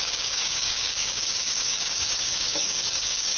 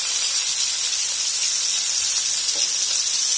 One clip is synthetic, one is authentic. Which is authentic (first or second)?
second